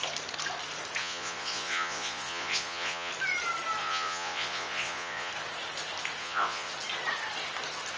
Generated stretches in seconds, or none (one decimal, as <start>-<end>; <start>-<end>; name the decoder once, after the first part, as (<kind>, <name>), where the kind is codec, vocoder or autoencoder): 1.0-3.1 (vocoder, Vocos); 3.8-5.3; 6.2-6.7